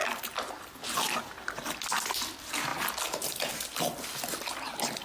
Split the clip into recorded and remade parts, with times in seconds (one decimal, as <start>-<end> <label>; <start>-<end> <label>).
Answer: 0.0-5.0 recorded

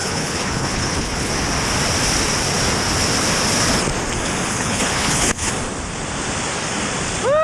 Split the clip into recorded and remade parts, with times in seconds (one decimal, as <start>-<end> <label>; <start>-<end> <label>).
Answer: 0.0-1.3 remade; 1.3-4.5 recorded; 4.5-5.5 remade; 5.5-7.4 recorded

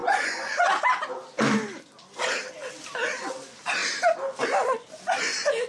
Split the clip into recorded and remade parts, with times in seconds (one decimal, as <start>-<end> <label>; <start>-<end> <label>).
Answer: 0.0-0.8 remade; 0.8-5.7 recorded

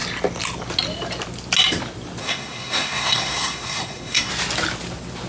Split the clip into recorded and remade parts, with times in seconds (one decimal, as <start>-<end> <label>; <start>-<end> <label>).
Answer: 0.0-2.2 recorded; 2.2-4.3 remade; 4.3-5.3 recorded

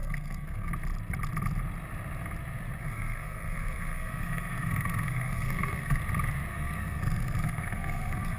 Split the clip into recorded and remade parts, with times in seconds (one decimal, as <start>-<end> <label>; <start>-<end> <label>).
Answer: 0.0-0.7 remade; 0.7-2.8 recorded; 2.8-6.0 remade; 6.0-6.5 recorded; 6.5-8.4 remade

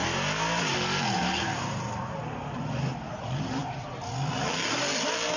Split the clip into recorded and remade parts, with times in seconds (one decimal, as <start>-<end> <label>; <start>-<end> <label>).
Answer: 0.0-5.4 recorded

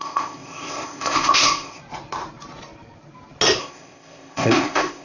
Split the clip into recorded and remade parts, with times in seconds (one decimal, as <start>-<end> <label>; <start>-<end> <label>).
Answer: 0.0-1.8 remade; 1.8-3.6 recorded; 3.6-5.0 remade